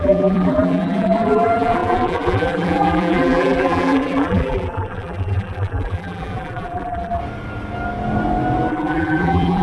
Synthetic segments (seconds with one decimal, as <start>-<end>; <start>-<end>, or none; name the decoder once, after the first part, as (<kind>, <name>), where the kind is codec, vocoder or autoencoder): 0.0-7.2 (vocoder, BigVGAN v2); 8.7-9.6